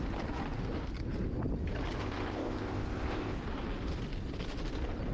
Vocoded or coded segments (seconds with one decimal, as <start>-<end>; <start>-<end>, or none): 2.0-3.4